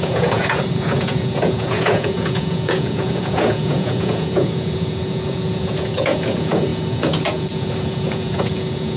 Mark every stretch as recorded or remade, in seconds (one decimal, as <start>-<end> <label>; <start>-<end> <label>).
0.0-9.0 remade